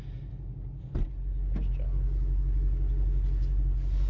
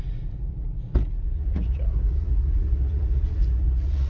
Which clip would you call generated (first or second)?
second